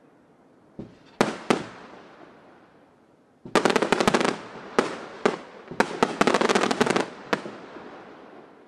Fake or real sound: real